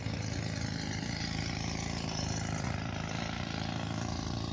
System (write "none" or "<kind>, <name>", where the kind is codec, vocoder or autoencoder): none